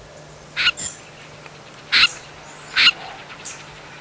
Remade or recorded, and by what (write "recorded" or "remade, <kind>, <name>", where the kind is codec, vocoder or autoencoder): recorded